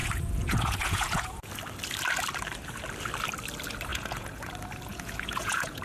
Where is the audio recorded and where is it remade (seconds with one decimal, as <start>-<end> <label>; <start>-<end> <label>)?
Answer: 0.0-1.5 remade; 1.5-3.9 recorded; 3.9-4.5 remade; 4.5-4.9 recorded; 4.9-5.8 remade